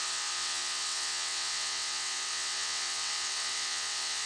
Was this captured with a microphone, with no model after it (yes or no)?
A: no